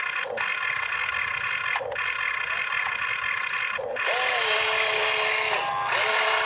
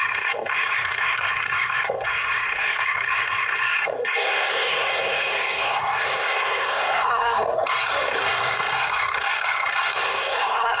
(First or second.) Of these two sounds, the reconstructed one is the second